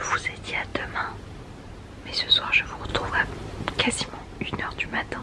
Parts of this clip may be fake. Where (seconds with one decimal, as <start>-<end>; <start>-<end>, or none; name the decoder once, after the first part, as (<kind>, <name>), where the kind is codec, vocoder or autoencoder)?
0.7-1.4 (vocoder, BigVGAN v2); 2.9-3.8